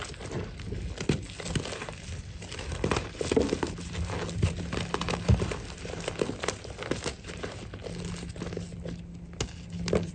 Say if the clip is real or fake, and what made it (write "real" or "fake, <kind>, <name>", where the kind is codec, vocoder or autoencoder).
real